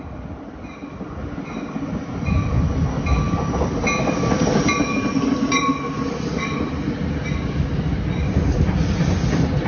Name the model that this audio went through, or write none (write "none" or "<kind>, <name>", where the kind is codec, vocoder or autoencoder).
none